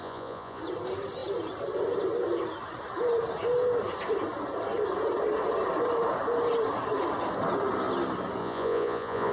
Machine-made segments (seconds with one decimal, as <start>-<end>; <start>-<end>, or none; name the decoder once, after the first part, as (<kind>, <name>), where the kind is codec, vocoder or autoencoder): 0.0-0.6 (vocoder, Vocos); 8.4-9.3

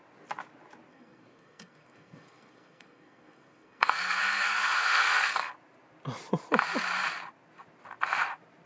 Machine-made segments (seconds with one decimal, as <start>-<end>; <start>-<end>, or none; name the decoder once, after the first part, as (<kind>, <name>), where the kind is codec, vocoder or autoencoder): 0.9-5.5 (codec, SNAC)